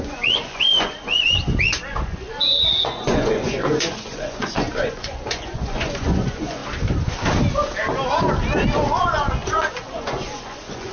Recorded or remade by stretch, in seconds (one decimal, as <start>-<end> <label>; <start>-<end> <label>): 0.0-6.6 remade; 6.6-9.0 recorded; 9.0-10.9 remade

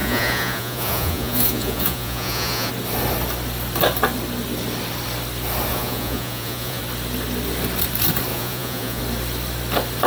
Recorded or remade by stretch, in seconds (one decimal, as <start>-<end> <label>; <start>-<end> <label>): 0.0-2.7 remade; 2.7-5.7 recorded; 5.7-6.8 remade; 6.8-8.3 recorded; 8.3-9.0 remade; 9.0-10.1 recorded

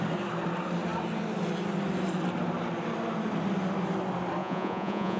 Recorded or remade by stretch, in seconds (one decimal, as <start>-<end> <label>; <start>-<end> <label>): 0.0-4.4 recorded; 4.4-5.2 remade

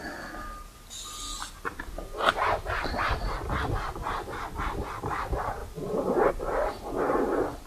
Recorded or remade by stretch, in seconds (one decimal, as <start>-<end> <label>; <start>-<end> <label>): 0.0-7.7 recorded

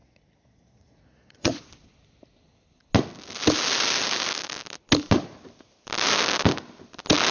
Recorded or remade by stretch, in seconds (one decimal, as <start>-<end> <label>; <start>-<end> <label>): 0.0-1.6 remade; 1.6-7.3 recorded

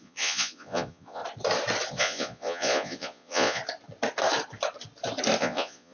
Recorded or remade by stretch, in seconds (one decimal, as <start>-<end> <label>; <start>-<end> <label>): 0.0-1.2 remade; 1.2-1.9 recorded; 1.9-3.6 remade; 3.6-5.4 recorded; 5.4-5.9 remade